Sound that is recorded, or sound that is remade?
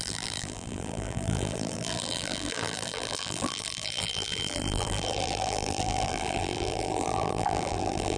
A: remade